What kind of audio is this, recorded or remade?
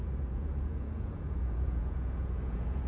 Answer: remade